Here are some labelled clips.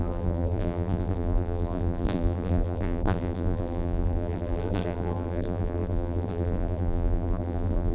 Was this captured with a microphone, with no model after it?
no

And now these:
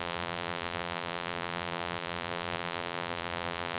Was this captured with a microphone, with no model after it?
no